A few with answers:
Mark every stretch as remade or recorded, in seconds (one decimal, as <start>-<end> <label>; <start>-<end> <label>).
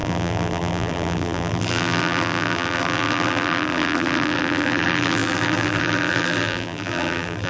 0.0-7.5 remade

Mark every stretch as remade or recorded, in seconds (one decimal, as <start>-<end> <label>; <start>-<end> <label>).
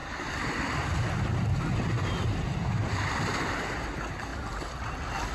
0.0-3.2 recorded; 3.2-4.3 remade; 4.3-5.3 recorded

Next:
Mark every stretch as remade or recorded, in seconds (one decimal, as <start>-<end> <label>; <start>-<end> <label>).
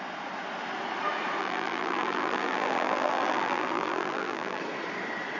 0.0-1.4 recorded; 1.4-4.6 remade; 4.6-5.4 recorded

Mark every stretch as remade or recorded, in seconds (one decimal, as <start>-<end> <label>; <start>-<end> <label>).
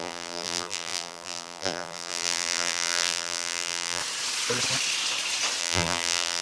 0.0-4.0 remade; 4.0-5.6 recorded; 5.6-6.4 remade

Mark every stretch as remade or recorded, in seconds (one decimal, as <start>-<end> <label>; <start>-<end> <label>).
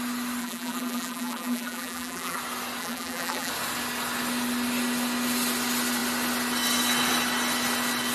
0.0-0.4 recorded; 0.4-2.4 remade; 2.4-2.8 recorded; 2.8-3.5 remade; 3.5-8.1 recorded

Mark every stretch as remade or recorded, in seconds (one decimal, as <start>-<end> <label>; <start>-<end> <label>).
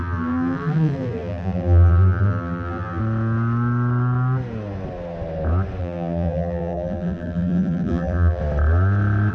0.0-3.0 remade; 3.0-5.8 recorded; 5.8-8.4 remade; 8.4-9.3 recorded